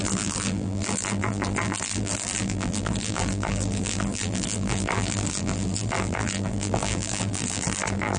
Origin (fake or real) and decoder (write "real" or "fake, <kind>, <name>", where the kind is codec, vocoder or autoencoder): fake, vocoder, BigVGAN v2